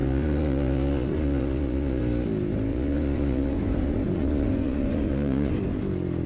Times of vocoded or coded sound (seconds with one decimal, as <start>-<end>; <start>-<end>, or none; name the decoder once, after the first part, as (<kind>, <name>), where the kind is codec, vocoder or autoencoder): 0.0-2.0 (vocoder, Vocos); 2.7-5.5